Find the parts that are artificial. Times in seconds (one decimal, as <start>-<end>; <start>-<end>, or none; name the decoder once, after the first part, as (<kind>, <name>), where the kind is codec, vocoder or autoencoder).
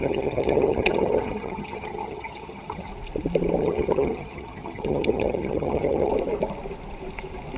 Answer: 0.0-2.9 (vocoder, HiFi-GAN); 3.6-6.1